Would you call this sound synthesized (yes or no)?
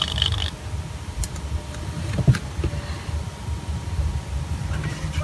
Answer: no